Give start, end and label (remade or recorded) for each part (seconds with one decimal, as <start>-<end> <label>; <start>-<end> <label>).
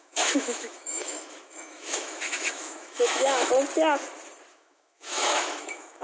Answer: 0.0-3.5 remade; 3.5-4.5 recorded; 4.5-6.0 remade